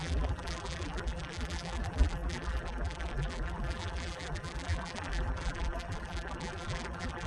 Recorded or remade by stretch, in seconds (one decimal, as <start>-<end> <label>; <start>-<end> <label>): 0.0-7.3 remade